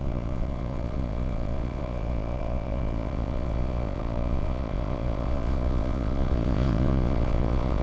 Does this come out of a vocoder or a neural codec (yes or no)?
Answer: yes